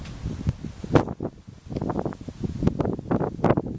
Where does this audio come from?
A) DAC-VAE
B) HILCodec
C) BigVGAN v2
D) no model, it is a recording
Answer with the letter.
D